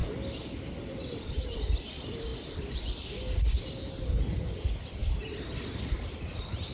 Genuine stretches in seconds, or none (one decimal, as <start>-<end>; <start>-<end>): 1.2-6.7